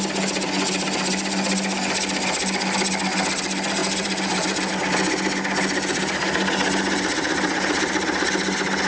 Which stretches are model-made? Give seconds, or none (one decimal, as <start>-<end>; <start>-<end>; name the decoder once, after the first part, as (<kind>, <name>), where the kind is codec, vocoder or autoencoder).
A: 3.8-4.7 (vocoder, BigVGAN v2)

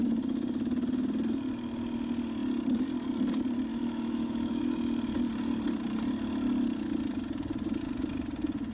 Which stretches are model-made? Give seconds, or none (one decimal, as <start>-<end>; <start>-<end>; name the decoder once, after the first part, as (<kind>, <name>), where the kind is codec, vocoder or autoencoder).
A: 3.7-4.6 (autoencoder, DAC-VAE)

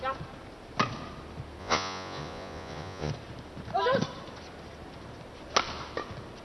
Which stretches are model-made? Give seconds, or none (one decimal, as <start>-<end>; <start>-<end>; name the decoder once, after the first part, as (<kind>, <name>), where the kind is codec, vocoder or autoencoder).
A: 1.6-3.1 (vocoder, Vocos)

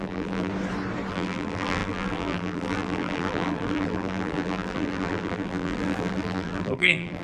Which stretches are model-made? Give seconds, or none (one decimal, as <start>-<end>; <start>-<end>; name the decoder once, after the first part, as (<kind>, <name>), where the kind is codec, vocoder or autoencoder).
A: 0.0-0.5 (vocoder, BigVGAN v2); 1.1-7.2

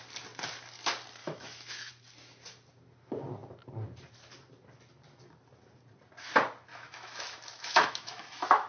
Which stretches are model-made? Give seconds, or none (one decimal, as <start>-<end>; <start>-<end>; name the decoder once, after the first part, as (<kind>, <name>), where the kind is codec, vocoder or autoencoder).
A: 1.2-1.9 (autoencoder, DAC-VAE); 6.7-8.7